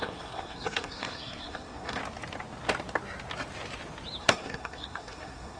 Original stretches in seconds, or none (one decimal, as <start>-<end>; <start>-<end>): 2.0-4.2